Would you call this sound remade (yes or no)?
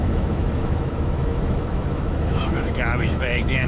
yes